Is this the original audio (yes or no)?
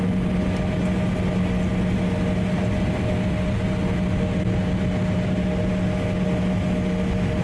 yes